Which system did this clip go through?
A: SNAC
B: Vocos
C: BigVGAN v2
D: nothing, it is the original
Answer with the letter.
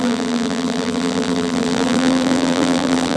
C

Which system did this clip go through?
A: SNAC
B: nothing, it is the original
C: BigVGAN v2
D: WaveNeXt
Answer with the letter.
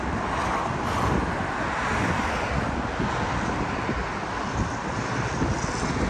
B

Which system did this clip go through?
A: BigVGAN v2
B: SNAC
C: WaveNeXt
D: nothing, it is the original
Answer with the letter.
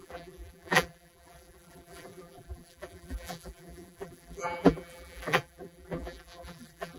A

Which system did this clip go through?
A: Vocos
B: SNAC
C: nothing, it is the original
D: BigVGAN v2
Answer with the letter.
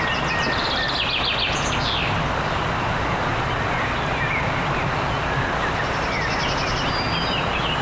C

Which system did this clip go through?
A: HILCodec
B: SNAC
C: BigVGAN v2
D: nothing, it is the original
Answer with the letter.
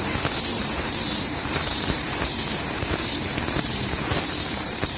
C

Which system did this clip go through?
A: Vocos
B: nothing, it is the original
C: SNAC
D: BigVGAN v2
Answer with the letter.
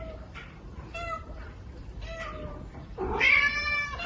D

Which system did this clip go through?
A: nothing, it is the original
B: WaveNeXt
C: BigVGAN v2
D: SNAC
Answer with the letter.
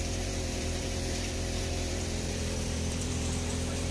C